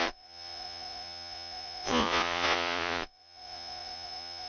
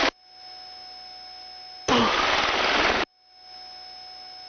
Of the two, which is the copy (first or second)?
first